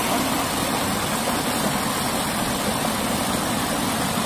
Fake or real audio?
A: real